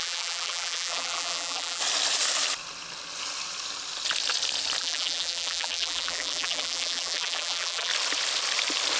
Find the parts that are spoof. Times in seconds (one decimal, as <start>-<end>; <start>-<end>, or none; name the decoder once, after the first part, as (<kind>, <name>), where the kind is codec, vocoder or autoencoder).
0.0-1.8 (vocoder, BigVGAN v2); 4.8-7.9

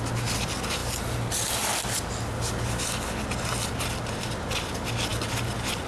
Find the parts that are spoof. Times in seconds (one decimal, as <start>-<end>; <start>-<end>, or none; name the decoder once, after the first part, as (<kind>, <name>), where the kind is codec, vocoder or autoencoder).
none

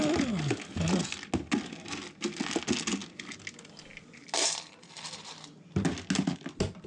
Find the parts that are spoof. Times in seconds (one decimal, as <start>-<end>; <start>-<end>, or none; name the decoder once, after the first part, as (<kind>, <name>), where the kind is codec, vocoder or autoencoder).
none

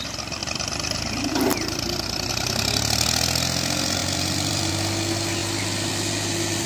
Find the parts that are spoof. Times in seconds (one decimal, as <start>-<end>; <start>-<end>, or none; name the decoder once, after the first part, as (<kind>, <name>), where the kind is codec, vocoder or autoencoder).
0.4-2.3 (vocoder, BigVGAN v2); 4.0-4.7

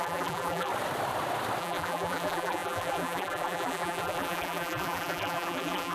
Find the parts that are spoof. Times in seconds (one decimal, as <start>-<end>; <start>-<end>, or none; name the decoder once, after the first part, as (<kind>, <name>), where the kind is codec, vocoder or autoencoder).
0.0-0.7 (vocoder, BigVGAN v2); 1.6-5.9